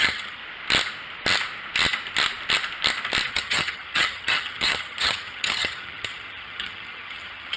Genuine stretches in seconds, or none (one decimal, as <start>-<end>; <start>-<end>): 0.4-3.3